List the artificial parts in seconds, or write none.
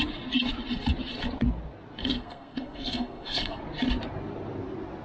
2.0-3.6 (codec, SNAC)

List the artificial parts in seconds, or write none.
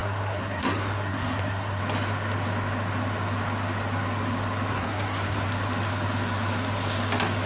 0.0-1.8 (codec, SNAC); 4.7-5.5